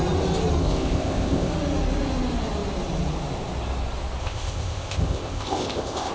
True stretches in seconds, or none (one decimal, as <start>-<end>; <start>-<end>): 0.0-0.6; 1.5-4.2